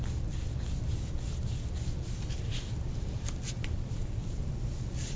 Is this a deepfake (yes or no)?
no